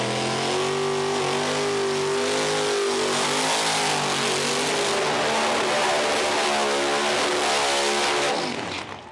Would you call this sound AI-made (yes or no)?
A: no